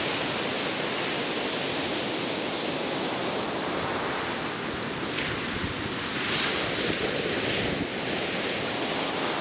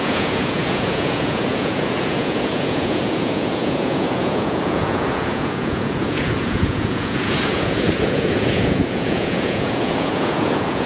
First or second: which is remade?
second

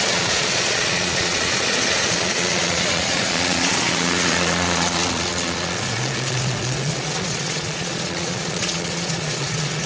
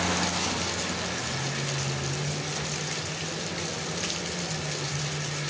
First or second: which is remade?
first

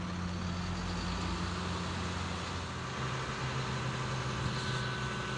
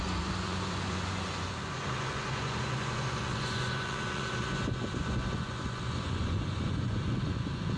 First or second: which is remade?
second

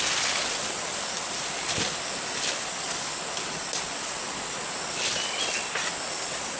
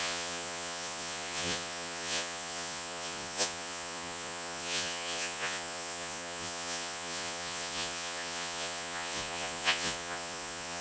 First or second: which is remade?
second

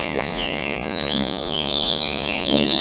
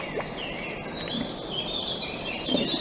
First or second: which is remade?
first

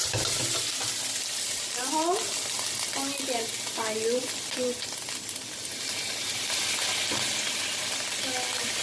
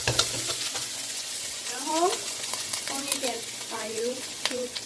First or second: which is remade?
second